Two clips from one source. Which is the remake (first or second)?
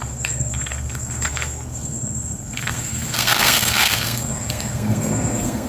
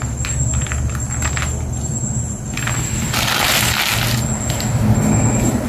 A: first